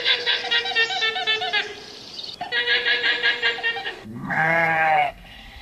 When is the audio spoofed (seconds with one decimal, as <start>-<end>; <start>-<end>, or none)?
0.0-0.4; 3.8-5.6